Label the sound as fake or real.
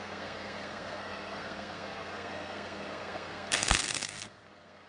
fake